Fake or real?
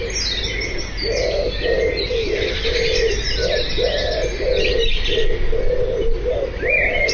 real